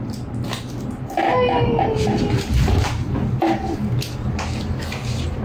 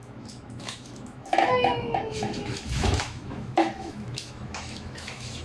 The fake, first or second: second